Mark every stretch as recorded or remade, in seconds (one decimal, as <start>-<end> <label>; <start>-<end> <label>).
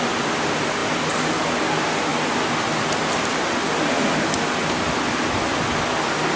0.0-6.4 recorded